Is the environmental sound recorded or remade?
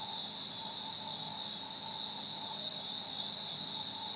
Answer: recorded